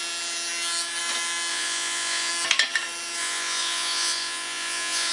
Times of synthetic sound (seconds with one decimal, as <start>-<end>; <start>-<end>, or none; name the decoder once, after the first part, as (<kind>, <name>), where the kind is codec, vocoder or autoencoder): 1.5-2.3 (vocoder, Vocos); 3.2-5.1